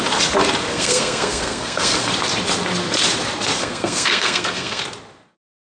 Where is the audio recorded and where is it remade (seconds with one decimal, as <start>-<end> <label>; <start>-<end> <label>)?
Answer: 0.0-0.7 recorded; 0.7-2.1 remade; 2.1-3.6 recorded; 3.6-4.8 remade; 4.8-5.7 recorded